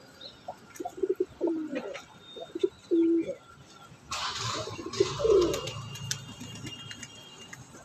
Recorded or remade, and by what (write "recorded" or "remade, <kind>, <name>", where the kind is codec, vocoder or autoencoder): recorded